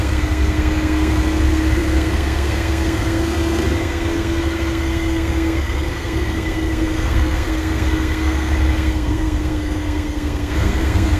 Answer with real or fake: fake